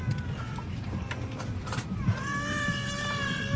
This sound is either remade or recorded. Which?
recorded